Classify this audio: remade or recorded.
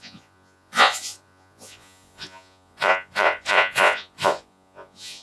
remade